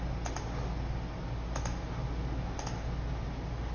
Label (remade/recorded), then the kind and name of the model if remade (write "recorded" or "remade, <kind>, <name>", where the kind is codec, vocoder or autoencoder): recorded